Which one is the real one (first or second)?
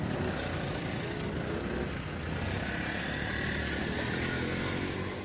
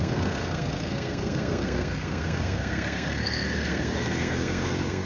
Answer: first